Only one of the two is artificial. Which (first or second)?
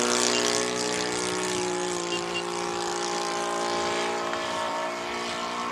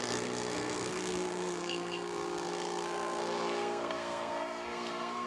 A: second